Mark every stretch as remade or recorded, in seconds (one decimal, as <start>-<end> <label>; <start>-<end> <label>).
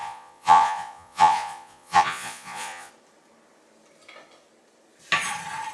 0.0-2.9 remade; 2.9-5.7 recorded